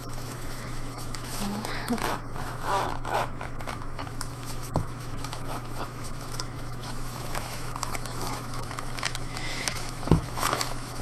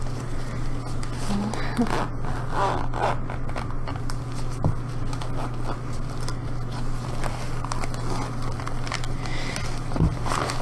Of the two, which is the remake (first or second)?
first